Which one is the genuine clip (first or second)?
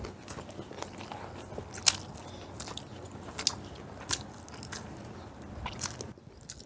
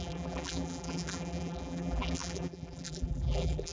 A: first